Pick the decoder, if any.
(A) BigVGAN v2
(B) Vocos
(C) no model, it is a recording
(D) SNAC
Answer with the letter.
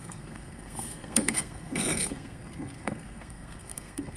D